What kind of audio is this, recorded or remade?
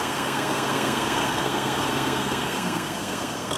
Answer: remade